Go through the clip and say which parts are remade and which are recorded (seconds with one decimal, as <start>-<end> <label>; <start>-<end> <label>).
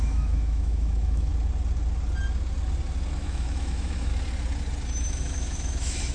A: 0.0-1.3 remade; 1.3-3.1 recorded; 3.1-4.1 remade; 4.1-5.1 recorded; 5.1-6.1 remade